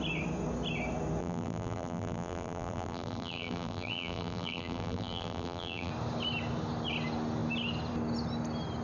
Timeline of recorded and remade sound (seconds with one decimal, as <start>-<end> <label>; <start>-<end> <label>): 0.0-1.2 recorded; 1.2-5.9 remade; 5.9-8.8 recorded